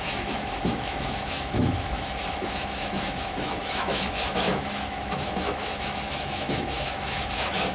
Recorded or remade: remade